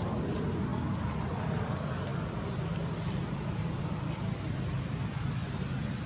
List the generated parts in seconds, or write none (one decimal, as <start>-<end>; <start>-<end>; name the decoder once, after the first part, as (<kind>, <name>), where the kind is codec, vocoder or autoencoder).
none